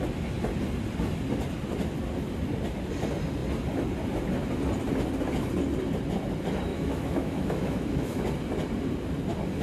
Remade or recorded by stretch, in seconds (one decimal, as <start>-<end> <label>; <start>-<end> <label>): 0.0-6.7 recorded; 6.7-8.2 remade; 8.2-9.6 recorded